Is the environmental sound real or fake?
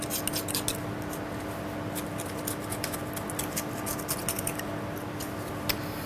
real